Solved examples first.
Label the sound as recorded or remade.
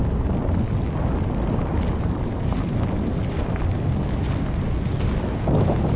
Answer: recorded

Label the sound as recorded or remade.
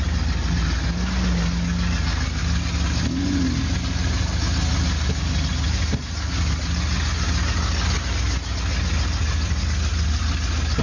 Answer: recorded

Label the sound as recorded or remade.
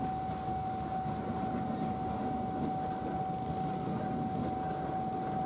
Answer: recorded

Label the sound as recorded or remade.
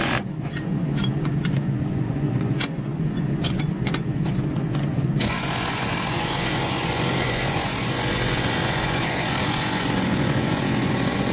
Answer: remade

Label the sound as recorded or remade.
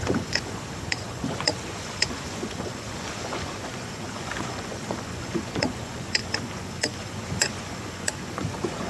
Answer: remade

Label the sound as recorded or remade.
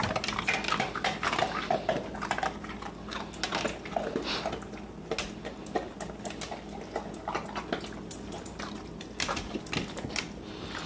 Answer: recorded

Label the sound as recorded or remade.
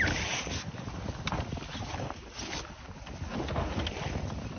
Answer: recorded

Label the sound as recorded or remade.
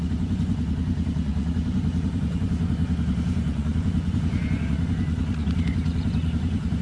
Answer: remade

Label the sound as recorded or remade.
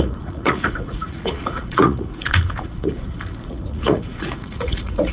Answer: remade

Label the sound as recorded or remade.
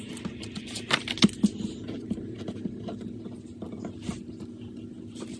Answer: recorded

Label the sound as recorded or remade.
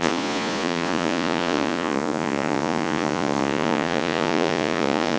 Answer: remade